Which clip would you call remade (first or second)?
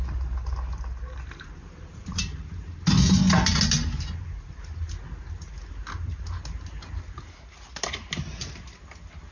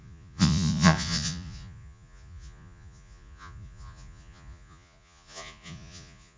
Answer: second